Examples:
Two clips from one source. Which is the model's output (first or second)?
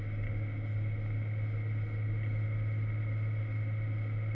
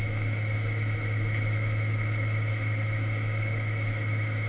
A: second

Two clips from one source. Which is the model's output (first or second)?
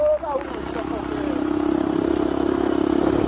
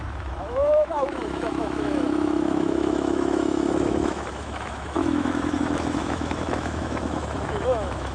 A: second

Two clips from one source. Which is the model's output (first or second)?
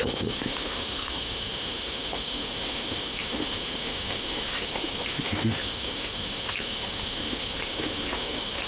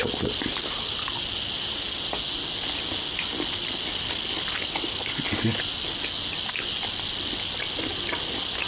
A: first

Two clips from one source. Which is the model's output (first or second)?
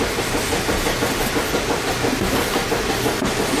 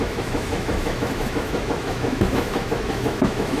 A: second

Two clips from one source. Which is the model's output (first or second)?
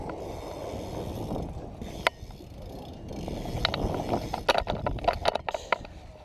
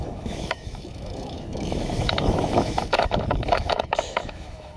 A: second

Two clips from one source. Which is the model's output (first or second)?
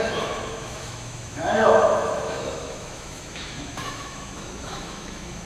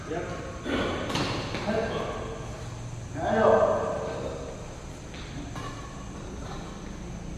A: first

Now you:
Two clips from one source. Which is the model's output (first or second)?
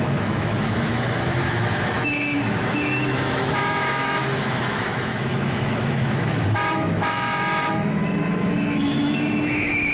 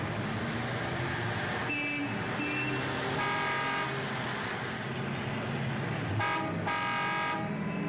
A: first